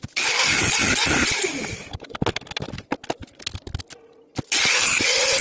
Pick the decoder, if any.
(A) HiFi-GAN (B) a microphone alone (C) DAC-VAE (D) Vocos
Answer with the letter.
B